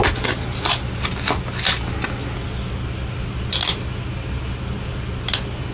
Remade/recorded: recorded